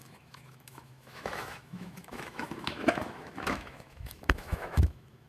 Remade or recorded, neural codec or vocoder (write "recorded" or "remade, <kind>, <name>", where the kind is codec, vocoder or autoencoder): remade, autoencoder, DAC-VAE